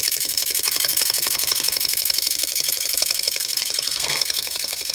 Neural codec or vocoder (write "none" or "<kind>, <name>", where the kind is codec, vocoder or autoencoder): codec, SNAC